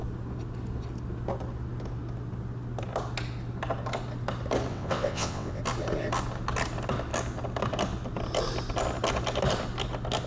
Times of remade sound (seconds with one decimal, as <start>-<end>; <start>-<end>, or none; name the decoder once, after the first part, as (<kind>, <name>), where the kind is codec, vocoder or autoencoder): 4.7-5.6 (vocoder, WaveNeXt)